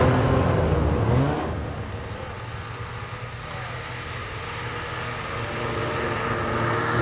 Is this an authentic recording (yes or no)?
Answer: yes